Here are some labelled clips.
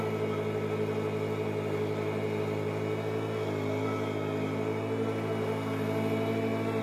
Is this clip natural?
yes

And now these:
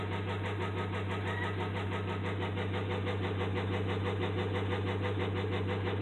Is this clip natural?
yes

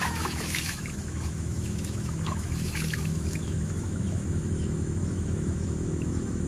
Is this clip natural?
no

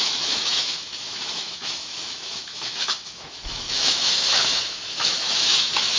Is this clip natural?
no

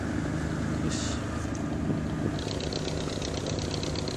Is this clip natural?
yes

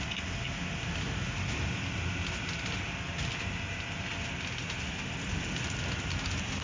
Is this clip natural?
yes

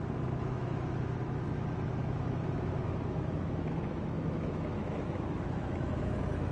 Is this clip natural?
no